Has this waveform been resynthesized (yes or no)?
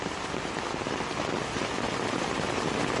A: no